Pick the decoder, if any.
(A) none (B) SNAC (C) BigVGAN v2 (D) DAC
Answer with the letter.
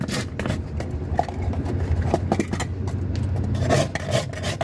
A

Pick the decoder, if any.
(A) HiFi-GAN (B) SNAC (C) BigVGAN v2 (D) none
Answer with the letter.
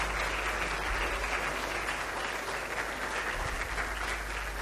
D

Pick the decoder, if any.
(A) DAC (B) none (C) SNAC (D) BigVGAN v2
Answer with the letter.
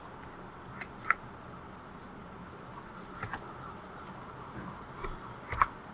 B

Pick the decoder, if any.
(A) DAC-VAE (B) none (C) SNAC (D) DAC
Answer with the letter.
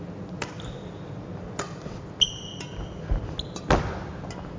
B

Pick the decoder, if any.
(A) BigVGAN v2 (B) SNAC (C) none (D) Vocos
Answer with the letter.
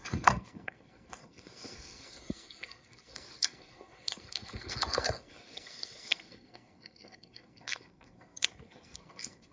B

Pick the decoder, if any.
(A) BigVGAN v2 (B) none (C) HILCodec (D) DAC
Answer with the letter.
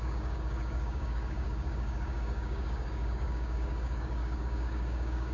D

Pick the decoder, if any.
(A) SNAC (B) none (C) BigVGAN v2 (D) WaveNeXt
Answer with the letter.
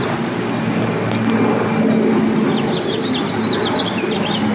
B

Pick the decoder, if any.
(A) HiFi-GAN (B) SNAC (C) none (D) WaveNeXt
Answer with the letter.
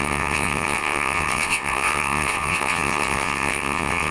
D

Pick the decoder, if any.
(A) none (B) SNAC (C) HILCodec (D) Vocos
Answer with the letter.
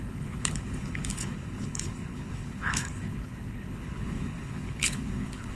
C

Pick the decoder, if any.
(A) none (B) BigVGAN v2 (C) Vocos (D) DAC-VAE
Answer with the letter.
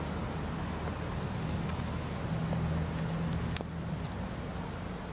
A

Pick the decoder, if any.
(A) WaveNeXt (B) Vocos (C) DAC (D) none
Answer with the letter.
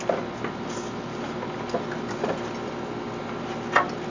D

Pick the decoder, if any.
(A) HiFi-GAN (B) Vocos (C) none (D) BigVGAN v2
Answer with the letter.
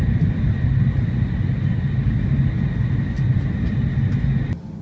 C